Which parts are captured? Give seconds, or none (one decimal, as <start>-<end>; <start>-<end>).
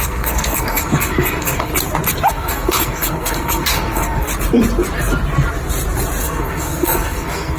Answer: 1.7-2.3; 4.3-6.2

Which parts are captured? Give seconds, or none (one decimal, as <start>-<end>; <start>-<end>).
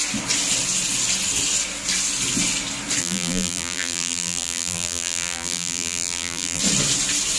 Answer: 0.0-3.0; 6.6-7.4